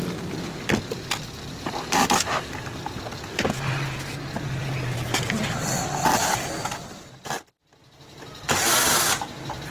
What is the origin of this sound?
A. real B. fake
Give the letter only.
A